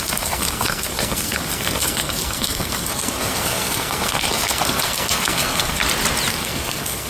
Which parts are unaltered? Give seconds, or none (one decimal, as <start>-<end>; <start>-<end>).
5.8-6.3